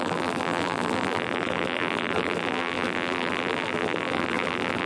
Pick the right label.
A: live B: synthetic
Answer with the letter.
B